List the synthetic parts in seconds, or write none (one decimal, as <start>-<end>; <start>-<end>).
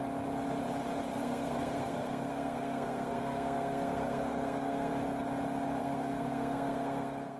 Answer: 1.1-4.9; 5.8-7.4